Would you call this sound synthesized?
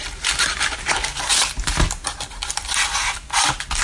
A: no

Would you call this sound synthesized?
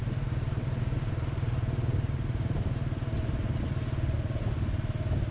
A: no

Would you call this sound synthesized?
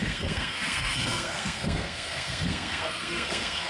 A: yes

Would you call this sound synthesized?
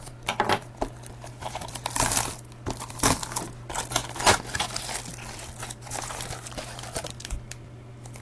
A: no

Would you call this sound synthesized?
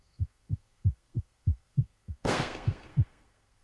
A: yes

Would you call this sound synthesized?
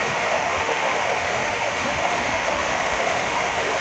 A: yes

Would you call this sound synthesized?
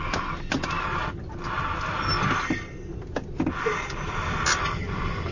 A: no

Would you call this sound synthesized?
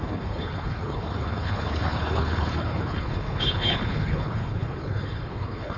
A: yes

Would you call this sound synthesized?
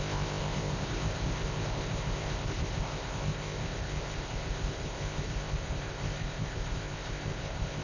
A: yes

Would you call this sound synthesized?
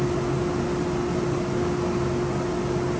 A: no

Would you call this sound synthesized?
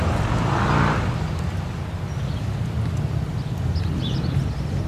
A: no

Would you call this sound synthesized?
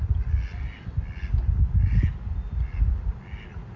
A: no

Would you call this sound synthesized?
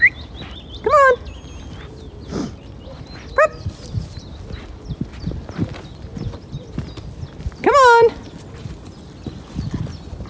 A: no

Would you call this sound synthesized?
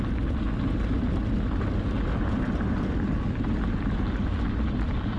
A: no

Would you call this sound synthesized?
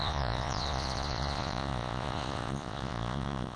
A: yes